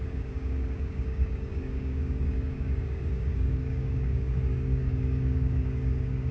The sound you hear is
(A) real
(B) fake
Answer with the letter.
B